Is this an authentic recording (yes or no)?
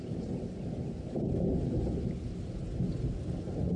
yes